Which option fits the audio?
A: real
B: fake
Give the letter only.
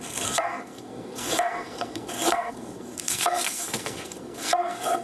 B